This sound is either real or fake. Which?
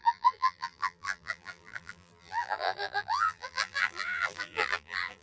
fake